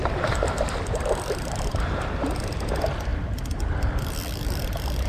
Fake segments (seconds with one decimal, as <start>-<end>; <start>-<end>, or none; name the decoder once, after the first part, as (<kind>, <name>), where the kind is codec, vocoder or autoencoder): none